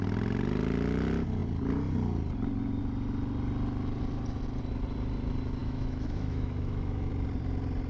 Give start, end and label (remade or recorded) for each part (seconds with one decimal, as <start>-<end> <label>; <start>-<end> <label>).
0.0-5.6 recorded; 5.6-7.1 remade; 7.1-7.9 recorded